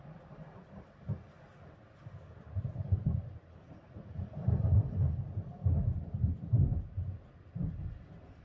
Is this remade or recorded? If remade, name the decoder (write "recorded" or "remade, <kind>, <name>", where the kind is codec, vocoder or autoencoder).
remade, vocoder, BigVGAN v2